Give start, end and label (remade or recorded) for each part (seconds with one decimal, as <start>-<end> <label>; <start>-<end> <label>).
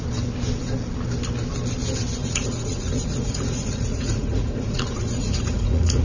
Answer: 0.0-2.2 recorded; 2.2-6.0 remade